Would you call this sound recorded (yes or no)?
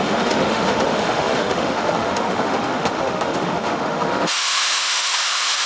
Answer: no